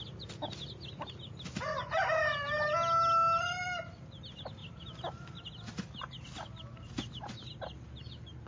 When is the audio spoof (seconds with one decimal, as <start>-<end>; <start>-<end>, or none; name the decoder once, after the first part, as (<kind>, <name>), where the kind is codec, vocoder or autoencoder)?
none